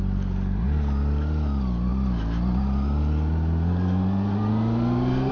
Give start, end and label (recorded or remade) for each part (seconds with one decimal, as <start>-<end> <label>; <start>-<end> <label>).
0.0-5.3 recorded